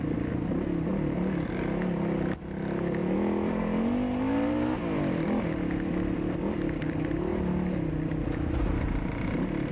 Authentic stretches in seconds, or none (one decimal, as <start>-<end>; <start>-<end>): 0.0-9.7